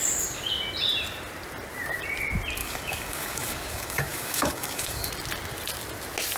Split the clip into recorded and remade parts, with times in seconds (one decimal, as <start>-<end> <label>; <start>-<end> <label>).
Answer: 0.0-2.6 recorded; 2.6-5.1 remade; 5.1-6.4 recorded